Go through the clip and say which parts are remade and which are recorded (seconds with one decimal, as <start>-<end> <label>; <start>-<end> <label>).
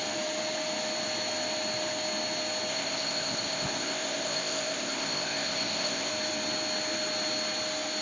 0.0-2.7 recorded; 2.7-6.1 remade; 6.1-8.0 recorded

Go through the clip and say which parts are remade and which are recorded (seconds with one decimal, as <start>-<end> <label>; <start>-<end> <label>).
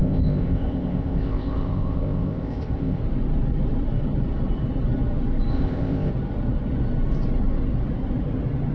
0.0-3.0 remade; 3.0-5.5 recorded; 5.5-6.1 remade; 6.1-8.7 recorded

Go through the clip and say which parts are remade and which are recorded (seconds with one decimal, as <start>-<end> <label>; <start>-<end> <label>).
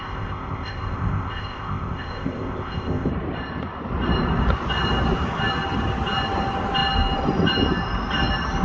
0.0-3.1 remade; 3.1-8.6 recorded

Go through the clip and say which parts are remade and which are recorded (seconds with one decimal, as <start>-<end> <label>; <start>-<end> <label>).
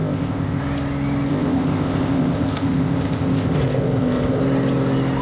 0.0-0.6 remade; 0.6-1.3 recorded; 1.3-4.4 remade; 4.4-5.2 recorded